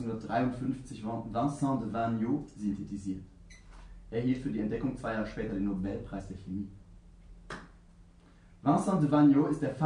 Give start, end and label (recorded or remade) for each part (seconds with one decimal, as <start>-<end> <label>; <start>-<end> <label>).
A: 0.0-9.9 recorded